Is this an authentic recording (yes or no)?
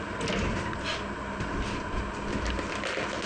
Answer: yes